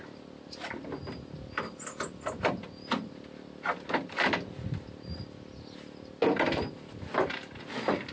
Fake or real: real